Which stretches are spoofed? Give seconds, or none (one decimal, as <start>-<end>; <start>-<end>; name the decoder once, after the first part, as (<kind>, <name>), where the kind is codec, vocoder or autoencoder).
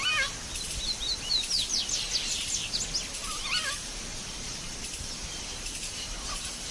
0.5-1.8 (vocoder, BigVGAN v2); 3.2-5.4